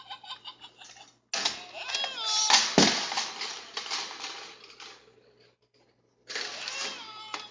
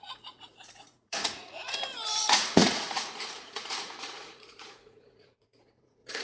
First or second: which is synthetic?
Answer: second